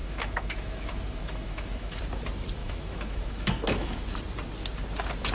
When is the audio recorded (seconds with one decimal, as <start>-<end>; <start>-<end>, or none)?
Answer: 2.0-2.6; 4.1-5.3